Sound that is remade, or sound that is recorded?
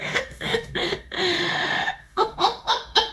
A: remade